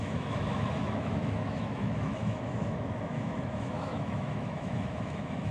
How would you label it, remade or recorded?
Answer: remade